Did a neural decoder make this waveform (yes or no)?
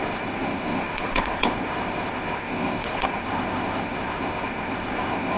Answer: yes